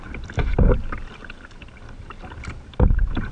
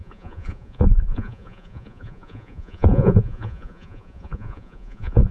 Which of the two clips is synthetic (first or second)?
second